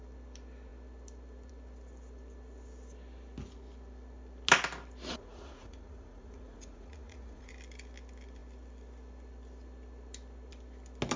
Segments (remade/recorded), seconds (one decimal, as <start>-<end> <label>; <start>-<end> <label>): 0.0-5.1 recorded; 5.1-7.5 remade; 7.5-11.2 recorded